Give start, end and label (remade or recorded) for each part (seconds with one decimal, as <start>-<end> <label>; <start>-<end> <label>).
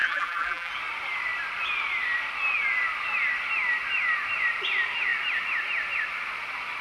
0.0-0.7 remade; 0.7-6.8 recorded